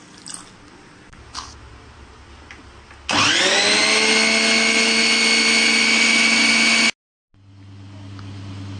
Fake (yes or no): no